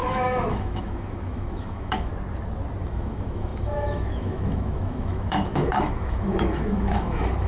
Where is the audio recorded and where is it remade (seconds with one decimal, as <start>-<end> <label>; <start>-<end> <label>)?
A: 0.0-2.1 remade; 2.1-2.8 recorded; 2.8-7.5 remade